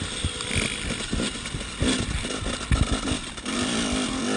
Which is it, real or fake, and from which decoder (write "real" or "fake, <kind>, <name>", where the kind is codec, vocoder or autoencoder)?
real